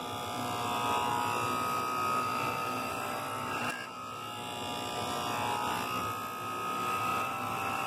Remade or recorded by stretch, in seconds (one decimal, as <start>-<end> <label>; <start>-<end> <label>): 0.0-7.9 recorded